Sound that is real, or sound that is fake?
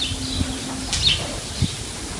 real